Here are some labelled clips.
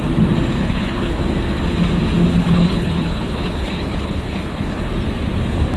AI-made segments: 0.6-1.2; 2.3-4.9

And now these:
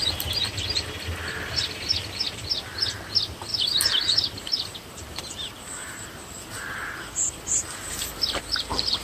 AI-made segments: 3.5-8.4

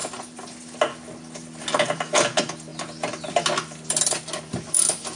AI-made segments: none

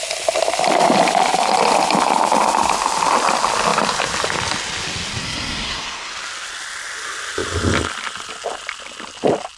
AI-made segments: 5.2-6.1

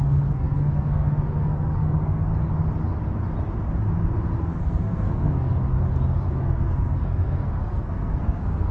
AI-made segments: 0.0-2.3; 4.4-5.5; 6.3-8.7

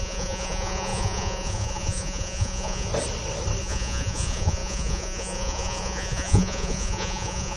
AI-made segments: 0.0-2.9; 3.6-7.6

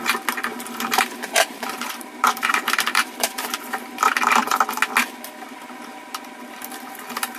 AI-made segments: 0.5-4.6

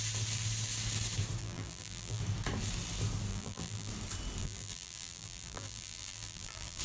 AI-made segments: 1.4-2.2; 3.3-3.9; 4.4-6.8